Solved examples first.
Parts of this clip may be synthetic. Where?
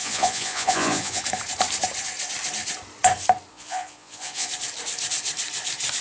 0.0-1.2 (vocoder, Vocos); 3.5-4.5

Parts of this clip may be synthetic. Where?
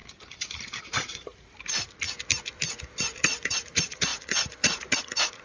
0.8-1.3 (vocoder, Vocos); 3.2-5.4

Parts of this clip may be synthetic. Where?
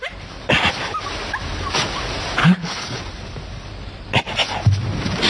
2.4-3.0 (codec, HILCodec)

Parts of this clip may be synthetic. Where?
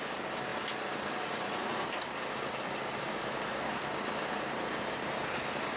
none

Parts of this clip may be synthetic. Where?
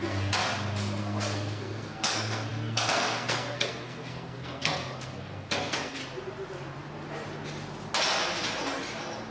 0.0-0.4 (codec, SNAC); 1.0-6.0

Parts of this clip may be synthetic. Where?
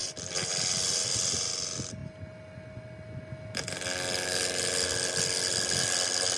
0.0-1.5 (vocoder, BigVGAN v2)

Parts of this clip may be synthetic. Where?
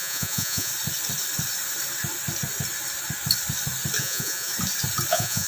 0.0-0.7 (vocoder, Vocos); 4.0-4.5; 5.1-5.5